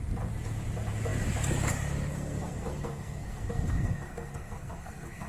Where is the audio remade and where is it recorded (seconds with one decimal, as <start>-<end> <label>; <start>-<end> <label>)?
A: 0.0-2.1 recorded; 2.1-5.3 remade